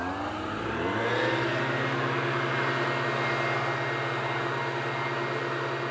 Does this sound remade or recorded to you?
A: recorded